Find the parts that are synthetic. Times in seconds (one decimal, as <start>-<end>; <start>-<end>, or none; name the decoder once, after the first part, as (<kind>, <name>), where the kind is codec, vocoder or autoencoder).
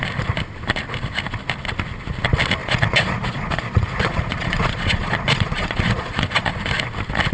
2.6-6.5 (vocoder, Vocos)